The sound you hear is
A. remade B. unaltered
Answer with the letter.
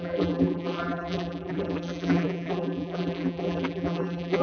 A